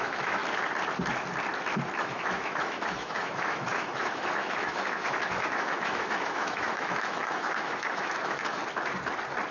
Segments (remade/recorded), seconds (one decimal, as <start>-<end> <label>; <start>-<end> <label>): 0.0-0.4 remade; 0.4-2.0 recorded; 2.0-8.6 remade; 8.6-9.5 recorded